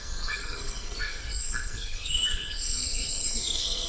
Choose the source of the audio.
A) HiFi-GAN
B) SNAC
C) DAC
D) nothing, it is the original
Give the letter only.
B